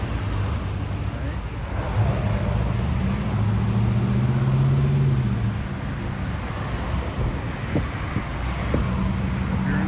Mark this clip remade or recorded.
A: recorded